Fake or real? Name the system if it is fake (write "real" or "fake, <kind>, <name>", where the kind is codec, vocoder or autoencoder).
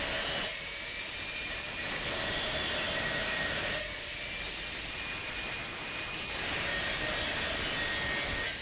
real